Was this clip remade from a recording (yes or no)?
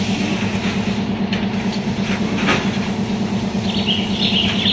no